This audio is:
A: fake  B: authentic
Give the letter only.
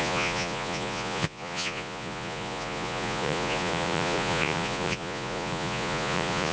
A